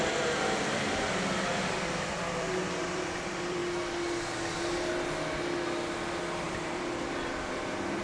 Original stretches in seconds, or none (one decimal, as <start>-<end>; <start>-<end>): 3.6-6.2